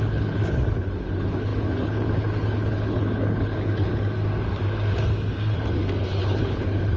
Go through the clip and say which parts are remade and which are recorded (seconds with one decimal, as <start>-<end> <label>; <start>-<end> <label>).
0.0-3.9 remade; 3.9-6.0 recorded; 6.0-7.0 remade